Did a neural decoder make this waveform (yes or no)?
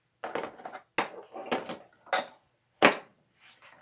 no